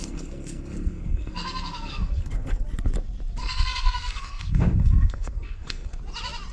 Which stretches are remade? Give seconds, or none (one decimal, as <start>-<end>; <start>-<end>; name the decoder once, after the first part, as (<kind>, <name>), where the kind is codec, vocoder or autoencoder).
0.0-2.6 (codec, SNAC); 3.4-6.0